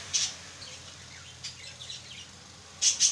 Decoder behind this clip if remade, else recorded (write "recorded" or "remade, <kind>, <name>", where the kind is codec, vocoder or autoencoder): recorded